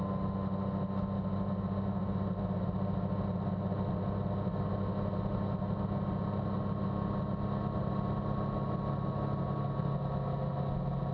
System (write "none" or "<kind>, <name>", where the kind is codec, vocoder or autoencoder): none